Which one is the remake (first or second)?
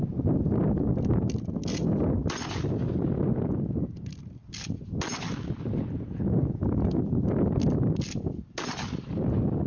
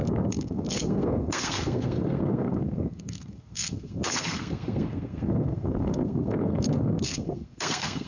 second